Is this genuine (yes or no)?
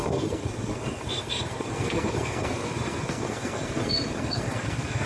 no